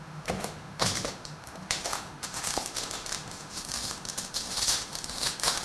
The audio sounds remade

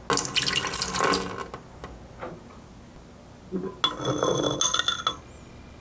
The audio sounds recorded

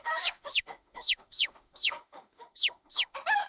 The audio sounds remade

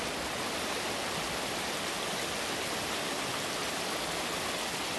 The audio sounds recorded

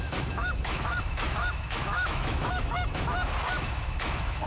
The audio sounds remade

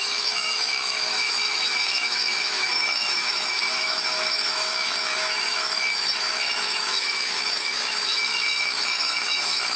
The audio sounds remade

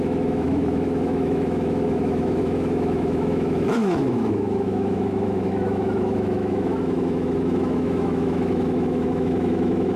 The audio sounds remade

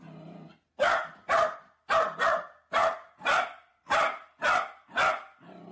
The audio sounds recorded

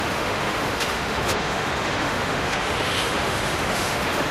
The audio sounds remade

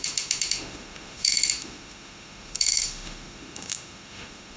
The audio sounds remade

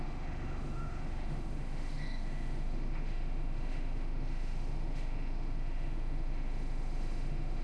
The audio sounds remade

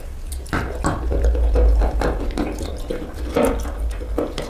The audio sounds recorded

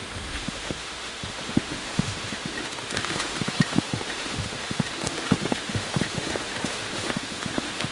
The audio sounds remade